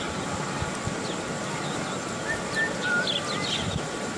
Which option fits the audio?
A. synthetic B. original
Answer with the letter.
B